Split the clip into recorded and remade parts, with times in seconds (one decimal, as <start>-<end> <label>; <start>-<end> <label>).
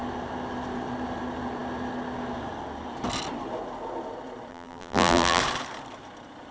0.0-4.5 recorded; 4.5-5.4 remade; 5.4-6.5 recorded